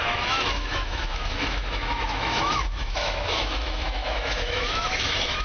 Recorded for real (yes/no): no